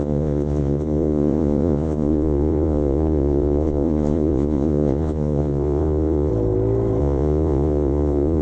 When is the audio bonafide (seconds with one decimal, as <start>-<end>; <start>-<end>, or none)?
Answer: 6.3-7.0